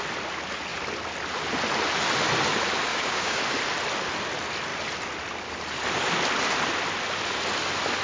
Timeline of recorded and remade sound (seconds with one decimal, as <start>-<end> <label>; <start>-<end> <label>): 0.0-2.9 recorded; 2.9-3.4 remade; 3.4-8.0 recorded

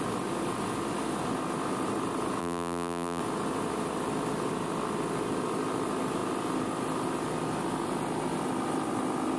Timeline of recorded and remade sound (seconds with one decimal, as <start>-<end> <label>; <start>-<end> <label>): 0.0-2.4 recorded; 2.4-3.2 remade; 3.2-9.4 recorded

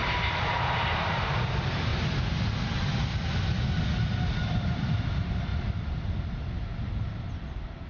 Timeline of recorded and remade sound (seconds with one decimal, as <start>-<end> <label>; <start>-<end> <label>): 0.0-0.7 recorded; 0.7-1.9 remade; 1.9-4.5 recorded; 4.5-5.5 remade; 5.5-7.9 recorded

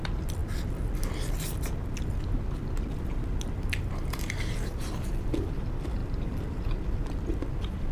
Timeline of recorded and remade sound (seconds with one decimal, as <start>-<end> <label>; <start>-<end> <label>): 0.0-0.4 remade; 0.4-3.9 recorded; 3.9-7.9 remade

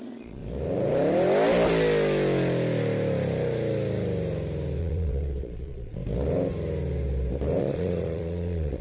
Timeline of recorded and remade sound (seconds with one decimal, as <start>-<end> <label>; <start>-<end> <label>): 0.0-0.4 remade; 0.4-4.8 recorded; 4.8-6.0 remade; 6.0-7.6 recorded; 7.6-8.8 remade

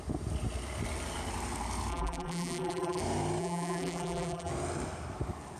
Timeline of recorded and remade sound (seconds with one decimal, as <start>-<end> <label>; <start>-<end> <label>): 0.0-1.9 recorded; 1.9-3.0 remade; 3.0-3.4 recorded; 3.4-4.5 remade; 4.5-5.6 recorded